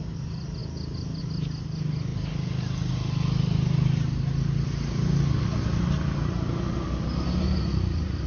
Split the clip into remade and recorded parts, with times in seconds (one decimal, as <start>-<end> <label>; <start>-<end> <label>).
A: 0.0-8.3 recorded